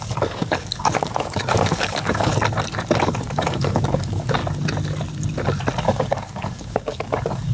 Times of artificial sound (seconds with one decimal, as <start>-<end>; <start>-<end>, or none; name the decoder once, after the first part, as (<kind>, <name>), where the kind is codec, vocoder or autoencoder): 0.0-2.3 (codec, DAC); 3.0-4.4; 5.8-7.5